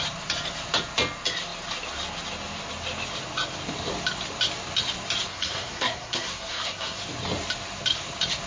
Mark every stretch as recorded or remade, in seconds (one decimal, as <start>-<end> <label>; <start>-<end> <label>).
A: 0.0-5.3 recorded; 5.3-7.0 remade; 7.0-8.5 recorded